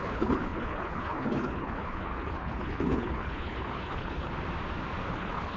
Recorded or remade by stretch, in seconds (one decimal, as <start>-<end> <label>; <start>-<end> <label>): 0.0-4.3 remade; 4.3-5.1 recorded; 5.1-5.6 remade